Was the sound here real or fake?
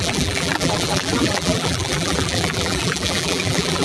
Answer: fake